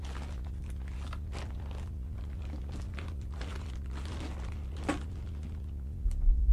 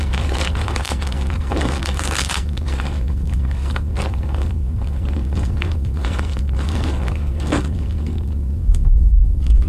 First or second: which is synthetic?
second